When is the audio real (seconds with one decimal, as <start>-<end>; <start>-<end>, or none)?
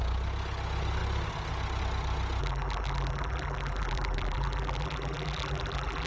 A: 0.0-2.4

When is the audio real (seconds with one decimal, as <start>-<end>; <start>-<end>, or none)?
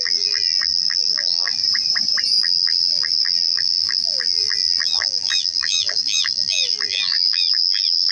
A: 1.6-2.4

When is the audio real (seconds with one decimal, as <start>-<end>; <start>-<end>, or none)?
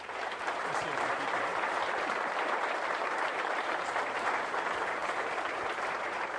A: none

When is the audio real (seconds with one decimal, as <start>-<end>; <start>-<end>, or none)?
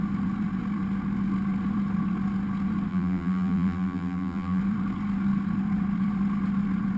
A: 0.0-2.9; 4.6-7.0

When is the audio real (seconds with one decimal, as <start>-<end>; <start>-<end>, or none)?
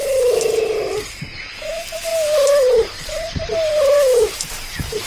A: 0.0-2.1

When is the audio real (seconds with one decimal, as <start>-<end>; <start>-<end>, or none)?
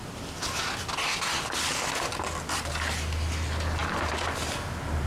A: 0.0-3.8; 4.3-5.1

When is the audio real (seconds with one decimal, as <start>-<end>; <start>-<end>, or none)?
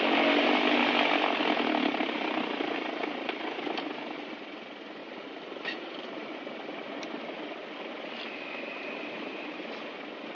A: 0.0-1.9; 2.4-5.0; 7.9-10.3